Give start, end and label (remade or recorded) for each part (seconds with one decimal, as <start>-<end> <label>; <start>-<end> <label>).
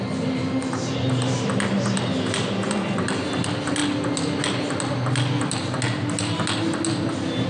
0.0-7.5 recorded